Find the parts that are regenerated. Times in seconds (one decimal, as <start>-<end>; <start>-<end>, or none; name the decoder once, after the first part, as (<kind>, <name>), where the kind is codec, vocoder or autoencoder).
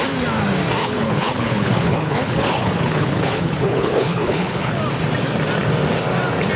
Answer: 0.8-4.8 (codec, HILCodec)